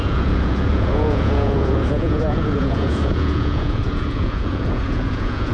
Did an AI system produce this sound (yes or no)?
yes